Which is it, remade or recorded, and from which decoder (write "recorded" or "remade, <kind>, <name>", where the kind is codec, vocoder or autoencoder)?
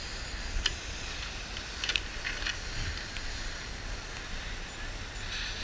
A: recorded